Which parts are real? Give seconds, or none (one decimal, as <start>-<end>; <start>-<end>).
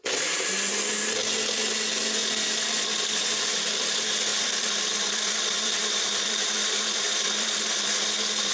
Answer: 0.0-2.2; 3.7-4.3; 8.0-8.5